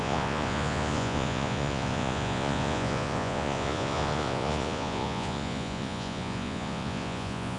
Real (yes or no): no